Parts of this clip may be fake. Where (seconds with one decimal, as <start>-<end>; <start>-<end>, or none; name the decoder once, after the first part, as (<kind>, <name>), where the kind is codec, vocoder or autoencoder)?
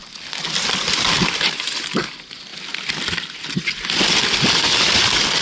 none